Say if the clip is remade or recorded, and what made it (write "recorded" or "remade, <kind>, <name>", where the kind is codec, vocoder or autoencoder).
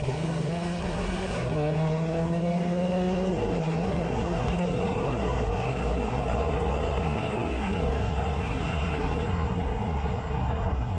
remade, codec, SNAC